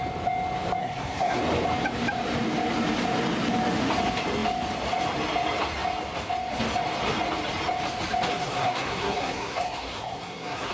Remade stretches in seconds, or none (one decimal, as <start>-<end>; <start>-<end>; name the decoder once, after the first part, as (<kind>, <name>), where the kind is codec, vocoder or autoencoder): 0.8-1.4 (codec, SNAC); 8.3-10.7